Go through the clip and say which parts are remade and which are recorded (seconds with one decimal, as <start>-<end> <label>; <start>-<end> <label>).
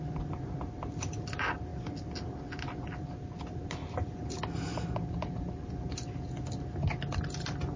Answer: 0.0-7.8 recorded